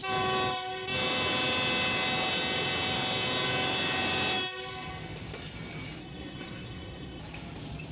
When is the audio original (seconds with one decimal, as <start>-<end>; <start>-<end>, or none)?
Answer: 0.0-6.0; 7.2-7.9